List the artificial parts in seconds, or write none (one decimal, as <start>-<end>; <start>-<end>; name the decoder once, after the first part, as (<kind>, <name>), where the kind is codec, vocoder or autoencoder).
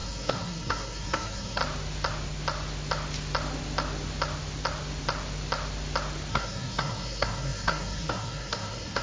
0.0-1.6 (codec, SNAC); 6.3-9.0